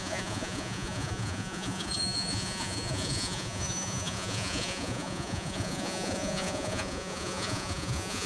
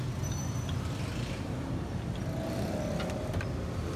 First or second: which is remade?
first